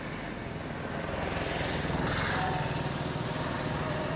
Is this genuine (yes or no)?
yes